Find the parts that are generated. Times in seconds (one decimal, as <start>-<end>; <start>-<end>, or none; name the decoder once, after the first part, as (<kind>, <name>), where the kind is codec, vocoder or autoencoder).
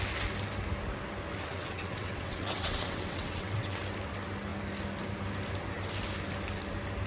1.5-3.8 (vocoder, WaveNeXt)